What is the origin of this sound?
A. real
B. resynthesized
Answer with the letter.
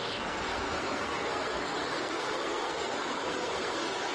B